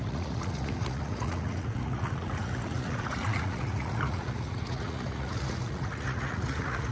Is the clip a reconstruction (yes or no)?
yes